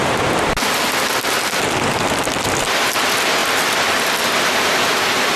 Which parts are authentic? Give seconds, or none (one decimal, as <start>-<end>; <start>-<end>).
0.0-5.4